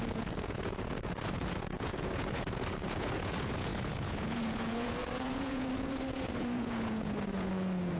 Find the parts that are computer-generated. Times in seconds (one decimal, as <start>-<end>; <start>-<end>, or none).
0.0-8.0